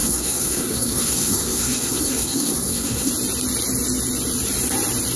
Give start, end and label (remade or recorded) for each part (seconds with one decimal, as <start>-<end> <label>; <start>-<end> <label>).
0.0-3.1 remade; 3.1-5.2 recorded